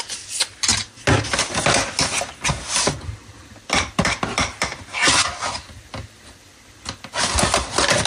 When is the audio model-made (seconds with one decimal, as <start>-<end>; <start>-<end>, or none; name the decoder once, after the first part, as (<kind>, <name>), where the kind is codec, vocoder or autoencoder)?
none